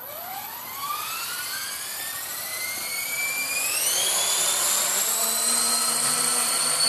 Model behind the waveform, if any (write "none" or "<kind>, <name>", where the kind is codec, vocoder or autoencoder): vocoder, BigVGAN v2